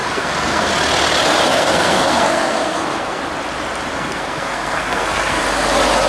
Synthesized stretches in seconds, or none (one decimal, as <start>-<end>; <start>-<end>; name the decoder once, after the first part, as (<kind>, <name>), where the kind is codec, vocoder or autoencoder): 0.0-0.7 (codec, SNAC); 1.5-3.2; 3.9-5.4